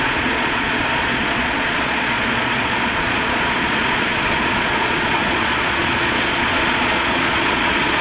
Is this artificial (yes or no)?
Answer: yes